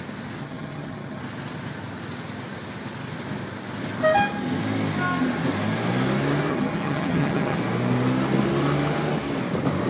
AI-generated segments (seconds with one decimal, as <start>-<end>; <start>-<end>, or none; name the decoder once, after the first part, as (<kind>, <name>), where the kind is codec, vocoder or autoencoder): 0.4-1.2 (vocoder, HiFi-GAN); 6.5-7.6